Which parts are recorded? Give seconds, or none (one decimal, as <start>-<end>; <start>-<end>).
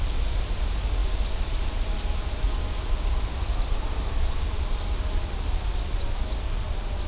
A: 0.0-7.1